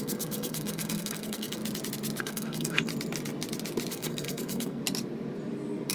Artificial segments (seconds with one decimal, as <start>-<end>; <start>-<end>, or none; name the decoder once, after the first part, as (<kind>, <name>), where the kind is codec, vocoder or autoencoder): 0.0-1.6 (codec, SNAC); 2.2-2.9; 3.9-4.8